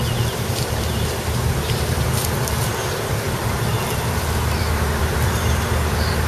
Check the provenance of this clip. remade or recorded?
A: remade